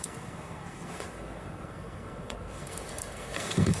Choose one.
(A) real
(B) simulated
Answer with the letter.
B